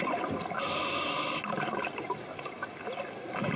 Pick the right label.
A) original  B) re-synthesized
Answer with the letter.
A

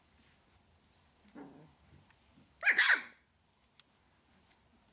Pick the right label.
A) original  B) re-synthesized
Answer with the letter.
A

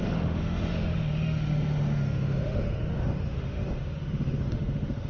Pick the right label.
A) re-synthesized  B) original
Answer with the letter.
A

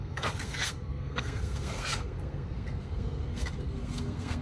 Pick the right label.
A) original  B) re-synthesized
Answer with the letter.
B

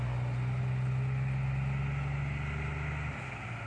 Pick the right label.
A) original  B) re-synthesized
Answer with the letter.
A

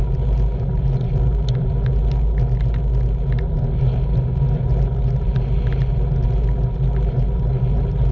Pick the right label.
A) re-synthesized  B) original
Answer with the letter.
B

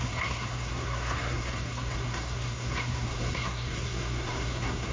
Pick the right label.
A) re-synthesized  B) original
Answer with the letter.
A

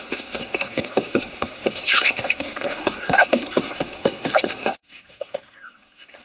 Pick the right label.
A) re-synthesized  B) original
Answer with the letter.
A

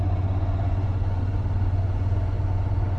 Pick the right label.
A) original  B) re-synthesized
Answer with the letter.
B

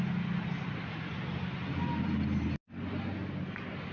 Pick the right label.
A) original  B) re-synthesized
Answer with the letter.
A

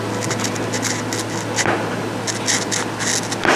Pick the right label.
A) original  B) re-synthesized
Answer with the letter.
A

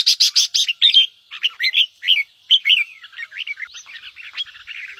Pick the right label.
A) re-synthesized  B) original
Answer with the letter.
B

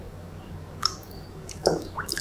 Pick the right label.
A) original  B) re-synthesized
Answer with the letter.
B